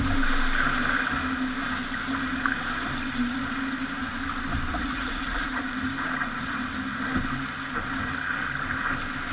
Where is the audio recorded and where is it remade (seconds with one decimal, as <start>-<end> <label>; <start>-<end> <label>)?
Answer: 0.0-4.7 recorded; 4.7-5.6 remade; 5.6-9.3 recorded